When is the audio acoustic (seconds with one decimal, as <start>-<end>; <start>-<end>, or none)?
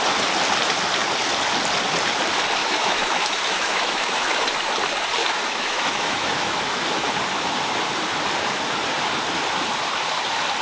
0.0-2.6; 4.7-5.2; 7.1-10.6